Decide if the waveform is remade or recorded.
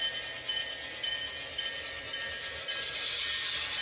recorded